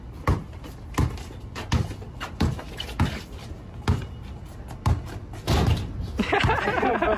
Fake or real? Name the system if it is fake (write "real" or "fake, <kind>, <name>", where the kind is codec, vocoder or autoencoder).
real